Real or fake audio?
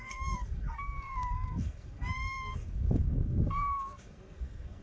fake